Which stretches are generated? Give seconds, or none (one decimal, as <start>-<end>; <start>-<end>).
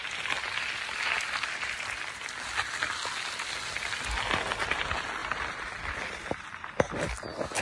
none